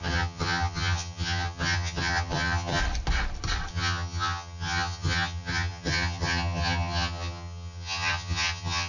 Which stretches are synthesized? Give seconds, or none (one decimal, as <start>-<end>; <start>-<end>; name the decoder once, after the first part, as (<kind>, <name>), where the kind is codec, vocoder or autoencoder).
0.0-2.8 (vocoder, HiFi-GAN); 3.7-8.9